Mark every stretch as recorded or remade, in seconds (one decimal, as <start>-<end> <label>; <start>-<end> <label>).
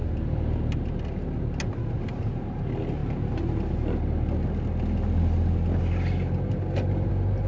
0.0-7.5 recorded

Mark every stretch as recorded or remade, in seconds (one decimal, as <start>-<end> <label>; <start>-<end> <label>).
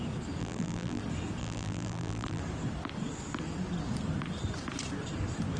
0.0-0.4 recorded; 0.4-1.0 remade; 1.0-1.4 recorded; 1.4-2.4 remade; 2.4-5.6 recorded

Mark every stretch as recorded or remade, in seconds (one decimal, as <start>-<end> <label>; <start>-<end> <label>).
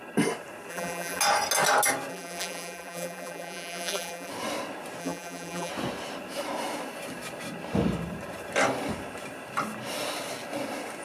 0.0-0.7 recorded; 0.7-1.2 remade; 1.2-2.1 recorded; 2.1-4.3 remade; 4.3-5.0 recorded; 5.0-5.7 remade; 5.7-11.0 recorded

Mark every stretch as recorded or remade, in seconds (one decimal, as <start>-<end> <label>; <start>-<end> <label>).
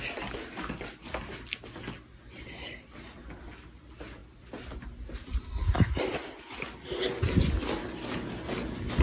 0.0-9.0 recorded